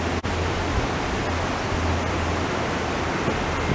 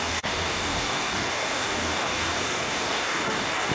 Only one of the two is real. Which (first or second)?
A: first